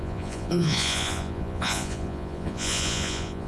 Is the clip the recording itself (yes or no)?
no